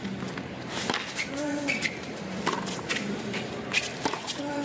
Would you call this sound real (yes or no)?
yes